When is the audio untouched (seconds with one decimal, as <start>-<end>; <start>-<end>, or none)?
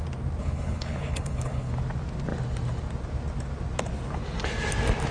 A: 0.0-0.4; 1.7-5.1